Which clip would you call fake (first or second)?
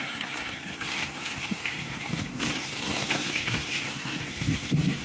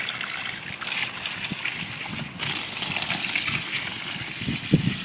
first